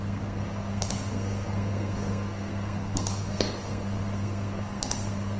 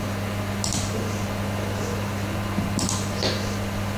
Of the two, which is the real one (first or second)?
second